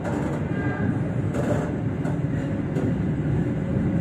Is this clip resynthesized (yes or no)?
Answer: no